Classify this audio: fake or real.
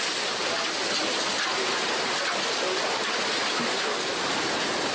real